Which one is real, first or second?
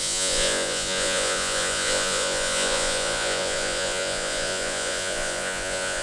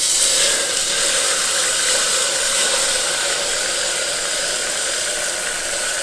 second